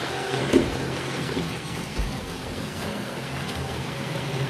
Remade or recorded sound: remade